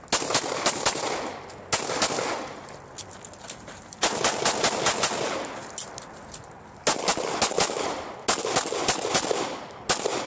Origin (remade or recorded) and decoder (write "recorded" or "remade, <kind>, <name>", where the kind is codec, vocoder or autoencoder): recorded